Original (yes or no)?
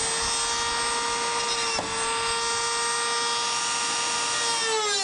yes